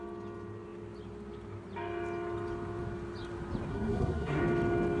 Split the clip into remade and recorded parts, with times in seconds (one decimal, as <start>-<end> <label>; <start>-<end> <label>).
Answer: 0.0-3.7 recorded; 3.7-4.4 remade; 4.4-5.0 recorded